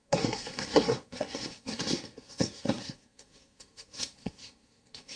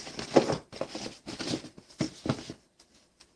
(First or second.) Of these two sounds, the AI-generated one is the first